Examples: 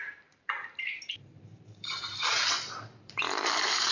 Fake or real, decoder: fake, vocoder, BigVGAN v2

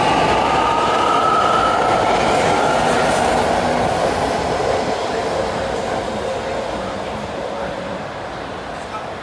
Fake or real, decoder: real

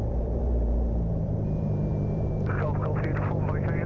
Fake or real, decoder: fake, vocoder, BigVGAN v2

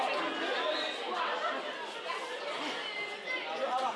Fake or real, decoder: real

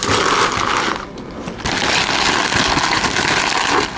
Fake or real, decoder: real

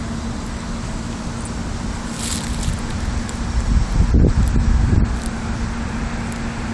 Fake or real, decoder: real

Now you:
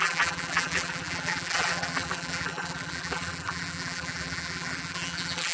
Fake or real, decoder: fake, vocoder, BigVGAN v2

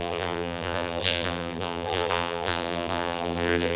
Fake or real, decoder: fake, vocoder, BigVGAN v2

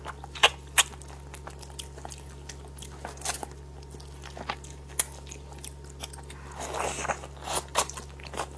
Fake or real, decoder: real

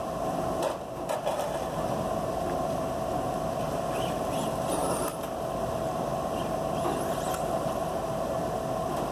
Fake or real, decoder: real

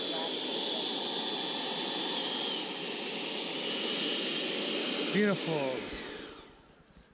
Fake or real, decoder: real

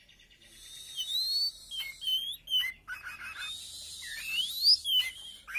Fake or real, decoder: real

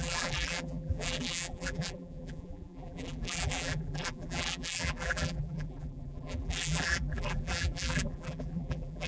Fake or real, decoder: fake, vocoder, BigVGAN v2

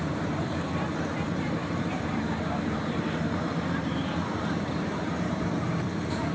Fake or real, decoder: fake, vocoder, BigVGAN v2